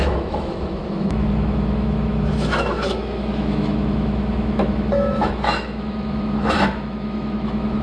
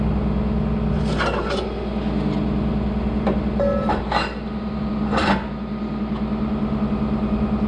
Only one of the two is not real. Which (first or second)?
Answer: first